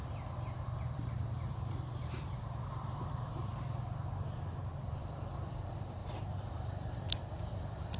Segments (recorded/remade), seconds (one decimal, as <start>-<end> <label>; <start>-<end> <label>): 0.0-0.9 recorded; 0.9-3.5 remade; 3.5-4.5 recorded; 4.5-8.0 remade